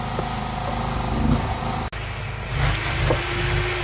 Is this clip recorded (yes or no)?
yes